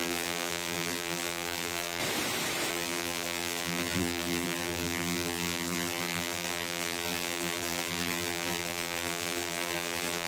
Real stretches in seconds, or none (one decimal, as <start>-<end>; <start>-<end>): 2.0-2.7